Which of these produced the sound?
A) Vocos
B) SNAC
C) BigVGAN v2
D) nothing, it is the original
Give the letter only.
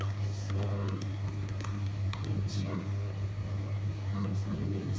B